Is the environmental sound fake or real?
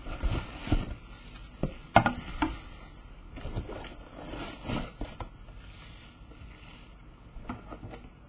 real